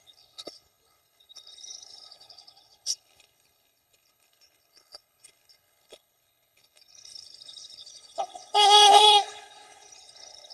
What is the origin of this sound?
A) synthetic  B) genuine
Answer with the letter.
A